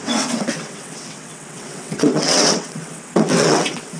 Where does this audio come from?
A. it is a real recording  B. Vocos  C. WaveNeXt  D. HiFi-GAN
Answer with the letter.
C